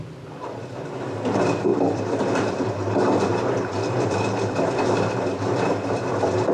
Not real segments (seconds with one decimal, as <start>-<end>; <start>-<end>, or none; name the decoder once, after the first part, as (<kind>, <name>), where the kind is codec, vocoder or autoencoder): 1.7-2.7 (vocoder, BigVGAN v2)